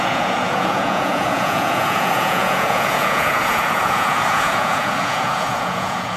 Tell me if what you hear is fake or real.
fake